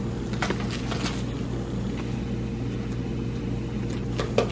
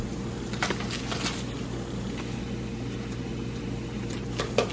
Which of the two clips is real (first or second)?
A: first